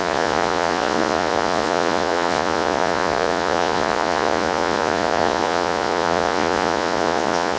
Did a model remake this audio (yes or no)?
yes